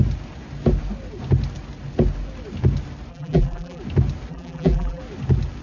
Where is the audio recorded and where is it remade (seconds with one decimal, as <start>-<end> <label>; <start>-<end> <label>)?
0.0-3.1 recorded; 3.1-3.8 remade; 3.8-4.3 recorded; 4.3-5.0 remade; 5.0-5.6 recorded

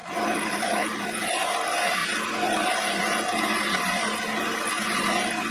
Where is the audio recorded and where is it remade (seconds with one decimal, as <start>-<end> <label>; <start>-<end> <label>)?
0.0-0.6 remade; 0.6-2.0 recorded; 2.0-2.8 remade; 2.8-5.5 recorded